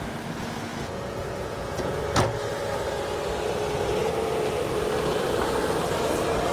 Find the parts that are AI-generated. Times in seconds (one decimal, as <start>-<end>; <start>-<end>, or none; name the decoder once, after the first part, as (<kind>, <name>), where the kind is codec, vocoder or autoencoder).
0.7-2.0 (vocoder, Vocos)